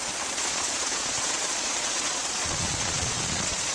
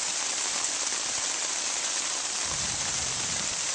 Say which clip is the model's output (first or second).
first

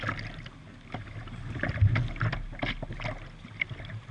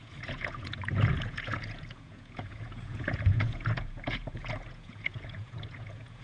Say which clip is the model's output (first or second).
second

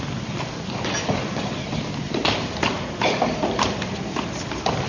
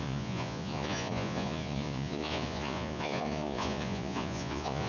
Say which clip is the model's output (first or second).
second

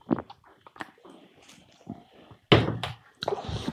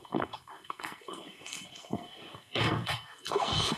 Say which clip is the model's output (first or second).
second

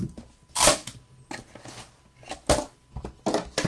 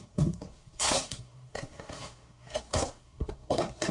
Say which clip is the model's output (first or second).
second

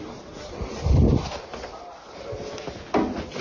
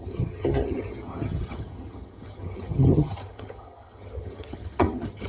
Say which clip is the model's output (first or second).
second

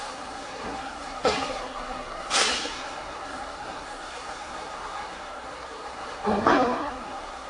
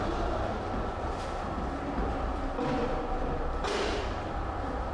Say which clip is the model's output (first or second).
first